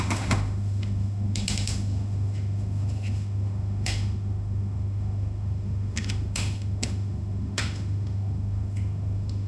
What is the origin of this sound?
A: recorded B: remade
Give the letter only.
B